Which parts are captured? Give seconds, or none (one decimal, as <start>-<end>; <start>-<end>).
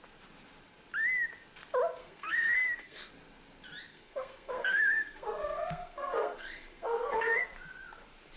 0.0-2.0; 3.1-3.9; 7.4-8.4